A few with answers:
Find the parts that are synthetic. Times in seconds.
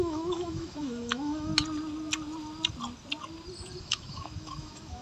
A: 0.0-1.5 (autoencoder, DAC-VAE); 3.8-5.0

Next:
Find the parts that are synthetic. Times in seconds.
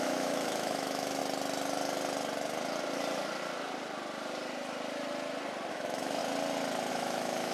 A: 0.0-1.2 (autoencoder, DAC-VAE); 5.7-6.2; 6.9-7.5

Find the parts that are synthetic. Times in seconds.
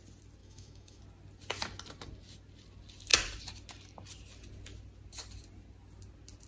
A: 0.4-1.0 (autoencoder, DAC-VAE)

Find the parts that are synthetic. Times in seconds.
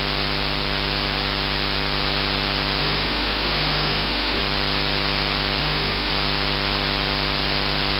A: 2.8-4.4 (autoencoder, DAC-VAE); 5.6-6.1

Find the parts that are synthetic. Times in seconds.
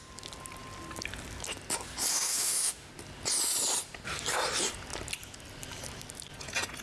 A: 2.1-2.9 (autoencoder, DAC-VAE)